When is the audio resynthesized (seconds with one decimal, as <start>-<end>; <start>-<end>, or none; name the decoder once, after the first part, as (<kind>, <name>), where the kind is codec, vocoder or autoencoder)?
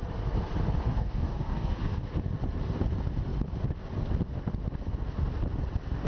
0.9-2.1 (codec, DAC)